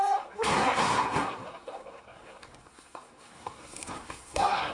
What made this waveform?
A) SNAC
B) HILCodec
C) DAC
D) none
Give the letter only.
A